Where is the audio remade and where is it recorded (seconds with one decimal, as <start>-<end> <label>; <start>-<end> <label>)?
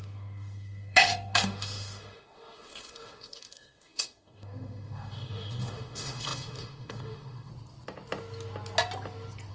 0.0-7.5 remade; 7.5-9.5 recorded